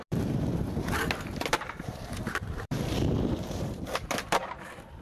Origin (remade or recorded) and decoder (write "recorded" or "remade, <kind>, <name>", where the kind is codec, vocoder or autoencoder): remade, vocoder, BigVGAN v2